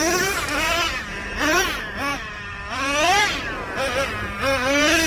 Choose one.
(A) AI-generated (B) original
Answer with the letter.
A